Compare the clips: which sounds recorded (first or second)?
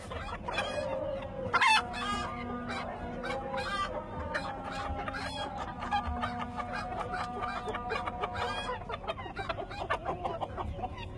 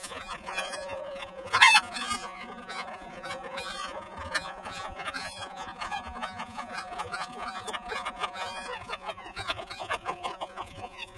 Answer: first